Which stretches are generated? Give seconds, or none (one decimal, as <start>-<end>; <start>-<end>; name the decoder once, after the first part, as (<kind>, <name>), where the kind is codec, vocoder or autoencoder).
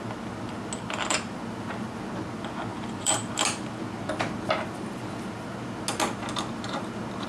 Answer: 2.7-3.8 (vocoder, BigVGAN v2)